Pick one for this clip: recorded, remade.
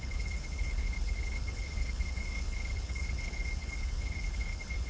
remade